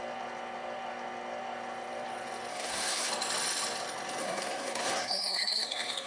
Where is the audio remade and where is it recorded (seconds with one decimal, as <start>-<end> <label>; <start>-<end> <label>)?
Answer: 0.0-2.5 recorded; 2.5-3.1 remade; 3.1-4.2 recorded; 4.2-6.1 remade